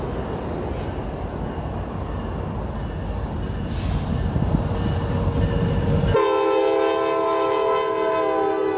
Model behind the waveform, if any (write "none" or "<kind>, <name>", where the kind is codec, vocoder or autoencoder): none